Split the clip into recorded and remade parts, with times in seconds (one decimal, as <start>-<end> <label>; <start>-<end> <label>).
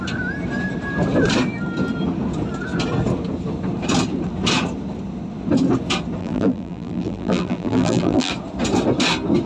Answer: 0.0-6.2 recorded; 6.2-8.3 remade; 8.3-9.5 recorded